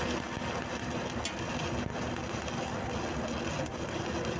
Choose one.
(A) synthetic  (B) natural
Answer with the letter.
B